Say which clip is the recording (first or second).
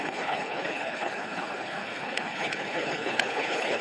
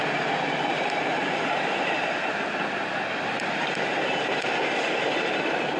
second